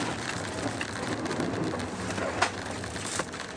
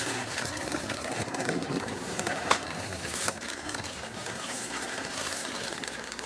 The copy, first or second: second